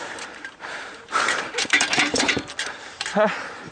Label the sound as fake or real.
fake